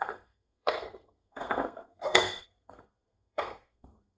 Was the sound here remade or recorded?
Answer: remade